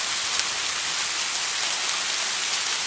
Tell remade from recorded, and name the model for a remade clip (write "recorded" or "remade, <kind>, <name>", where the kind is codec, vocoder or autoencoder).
recorded